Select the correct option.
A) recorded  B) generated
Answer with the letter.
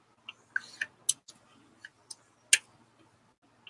A